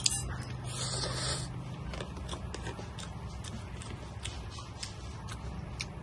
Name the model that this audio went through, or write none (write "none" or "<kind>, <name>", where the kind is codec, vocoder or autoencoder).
none